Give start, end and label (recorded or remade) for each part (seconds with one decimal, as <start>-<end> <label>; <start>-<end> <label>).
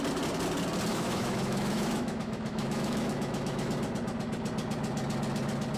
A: 0.0-0.9 recorded; 0.9-3.7 remade; 3.7-5.8 recorded